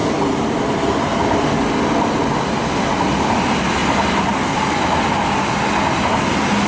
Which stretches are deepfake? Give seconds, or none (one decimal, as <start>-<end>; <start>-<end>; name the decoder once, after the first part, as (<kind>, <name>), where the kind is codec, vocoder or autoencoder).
none

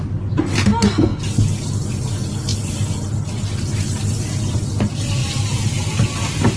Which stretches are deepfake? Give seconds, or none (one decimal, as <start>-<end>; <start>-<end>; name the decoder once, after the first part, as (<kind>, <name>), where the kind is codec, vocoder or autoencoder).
none